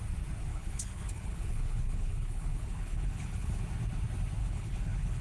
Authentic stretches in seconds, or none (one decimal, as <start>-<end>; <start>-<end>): 0.0-0.5; 3.6-4.4